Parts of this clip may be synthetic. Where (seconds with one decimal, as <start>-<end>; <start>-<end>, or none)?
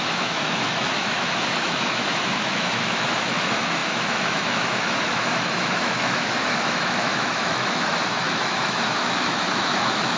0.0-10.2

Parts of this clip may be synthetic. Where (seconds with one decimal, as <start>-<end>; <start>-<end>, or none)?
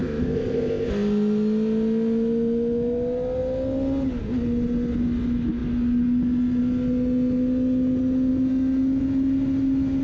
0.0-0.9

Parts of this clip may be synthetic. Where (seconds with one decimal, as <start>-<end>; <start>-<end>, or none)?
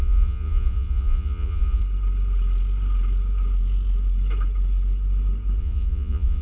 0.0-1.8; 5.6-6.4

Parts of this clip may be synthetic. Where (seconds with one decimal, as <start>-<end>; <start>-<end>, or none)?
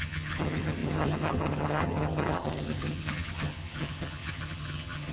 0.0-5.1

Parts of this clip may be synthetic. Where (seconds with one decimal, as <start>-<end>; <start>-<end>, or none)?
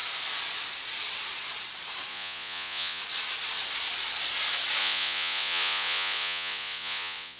2.1-3.0; 4.8-7.4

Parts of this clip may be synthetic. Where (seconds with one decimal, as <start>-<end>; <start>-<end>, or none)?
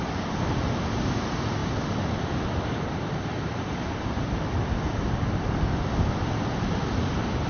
none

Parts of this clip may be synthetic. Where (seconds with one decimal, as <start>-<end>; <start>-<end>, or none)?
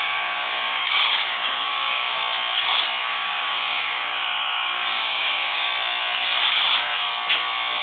0.0-2.2; 3.0-5.7; 6.4-7.1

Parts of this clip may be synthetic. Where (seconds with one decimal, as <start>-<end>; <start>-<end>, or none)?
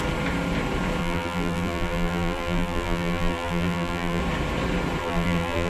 1.0-4.2; 5.0-5.7